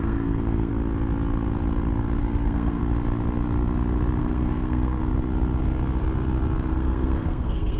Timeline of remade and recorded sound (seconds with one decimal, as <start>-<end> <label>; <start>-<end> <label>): 0.0-0.7 remade; 0.7-2.2 recorded; 2.2-2.8 remade; 2.8-4.2 recorded; 4.2-5.0 remade; 5.0-6.7 recorded; 6.7-7.8 remade